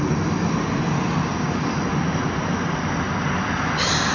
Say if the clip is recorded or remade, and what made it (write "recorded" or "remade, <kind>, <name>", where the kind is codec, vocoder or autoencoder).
recorded